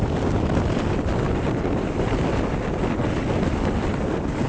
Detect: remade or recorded recorded